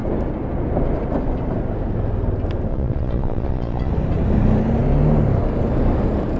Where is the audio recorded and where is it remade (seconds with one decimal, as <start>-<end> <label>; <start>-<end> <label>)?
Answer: 0.0-2.7 recorded; 2.7-3.9 remade; 3.9-6.4 recorded